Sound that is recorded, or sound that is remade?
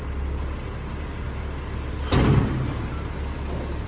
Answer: recorded